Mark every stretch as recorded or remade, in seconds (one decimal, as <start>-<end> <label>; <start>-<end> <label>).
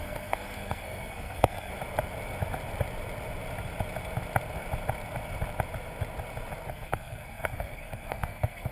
0.0-1.7 remade; 1.7-6.7 recorded; 6.7-8.7 remade